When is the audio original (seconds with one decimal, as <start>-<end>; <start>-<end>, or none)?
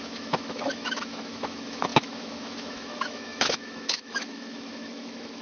none